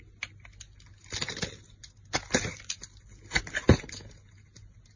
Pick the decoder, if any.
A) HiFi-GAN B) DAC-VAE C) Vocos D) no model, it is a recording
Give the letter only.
D